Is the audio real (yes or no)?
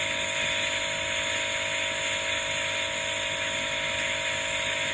yes